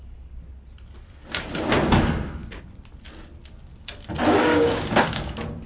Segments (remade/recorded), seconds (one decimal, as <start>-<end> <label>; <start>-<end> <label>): 0.0-4.5 recorded; 4.5-5.3 remade; 5.3-5.7 recorded

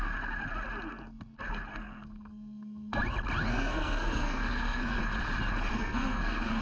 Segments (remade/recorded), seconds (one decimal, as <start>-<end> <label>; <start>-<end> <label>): 0.0-1.7 recorded; 1.7-3.0 remade; 3.0-3.5 recorded; 3.5-5.0 remade; 5.0-5.7 recorded; 5.7-6.6 remade

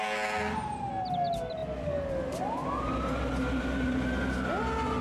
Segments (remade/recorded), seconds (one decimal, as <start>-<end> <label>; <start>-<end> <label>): 0.0-5.0 recorded

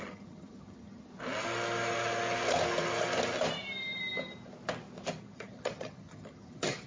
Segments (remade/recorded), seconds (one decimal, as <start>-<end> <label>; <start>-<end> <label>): 0.0-1.1 remade; 1.1-5.2 recorded; 5.2-6.9 remade

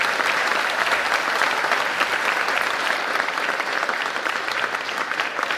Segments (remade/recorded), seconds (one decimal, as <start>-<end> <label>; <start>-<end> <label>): 0.0-0.5 remade; 0.5-2.5 recorded; 2.5-5.6 remade